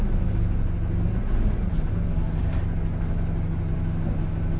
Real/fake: real